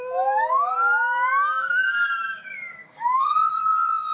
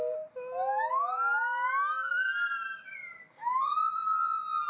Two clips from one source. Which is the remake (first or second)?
first